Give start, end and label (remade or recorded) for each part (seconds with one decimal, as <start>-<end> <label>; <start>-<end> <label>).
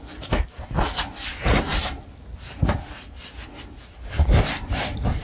0.0-5.2 recorded